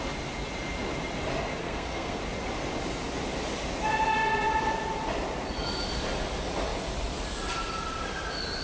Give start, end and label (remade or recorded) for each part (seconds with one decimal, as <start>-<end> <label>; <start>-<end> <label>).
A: 0.0-1.6 recorded; 1.6-2.2 remade; 2.2-8.6 recorded